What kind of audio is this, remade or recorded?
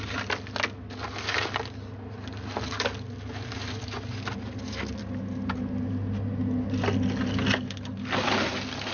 recorded